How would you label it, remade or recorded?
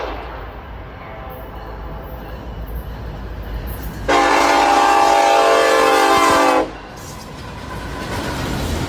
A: recorded